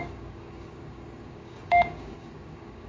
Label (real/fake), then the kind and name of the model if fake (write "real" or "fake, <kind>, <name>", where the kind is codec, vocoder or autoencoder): fake, codec, DAC